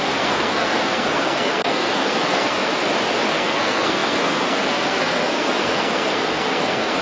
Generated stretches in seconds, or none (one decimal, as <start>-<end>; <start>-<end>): 0.0-2.7; 3.3-7.0